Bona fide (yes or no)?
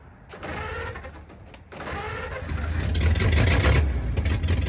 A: yes